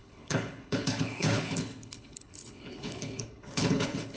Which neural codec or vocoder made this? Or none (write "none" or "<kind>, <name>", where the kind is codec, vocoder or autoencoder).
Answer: codec, HILCodec